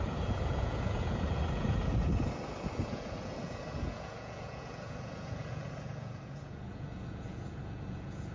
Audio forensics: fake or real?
fake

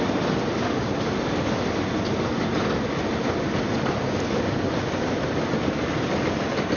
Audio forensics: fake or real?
real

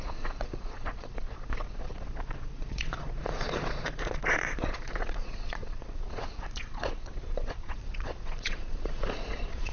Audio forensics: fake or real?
fake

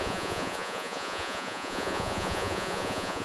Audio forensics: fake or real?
fake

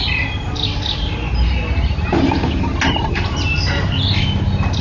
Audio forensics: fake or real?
real